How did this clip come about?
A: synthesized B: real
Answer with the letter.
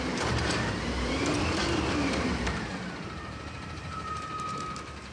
A